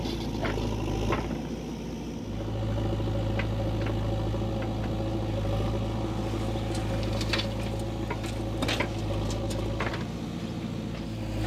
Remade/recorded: recorded